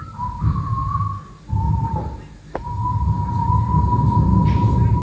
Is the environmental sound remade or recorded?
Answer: recorded